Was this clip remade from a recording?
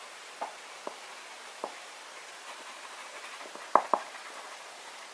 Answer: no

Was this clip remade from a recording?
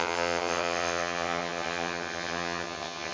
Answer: yes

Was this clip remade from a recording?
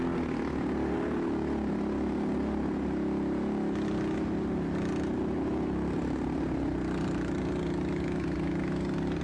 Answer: no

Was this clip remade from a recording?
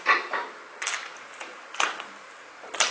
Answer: no